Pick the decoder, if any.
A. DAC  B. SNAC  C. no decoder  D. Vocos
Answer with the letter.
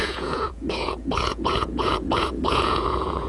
D